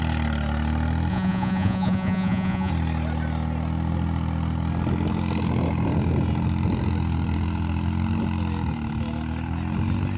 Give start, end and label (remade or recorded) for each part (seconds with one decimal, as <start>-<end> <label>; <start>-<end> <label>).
0.0-1.1 recorded; 1.1-2.7 remade; 2.7-10.2 recorded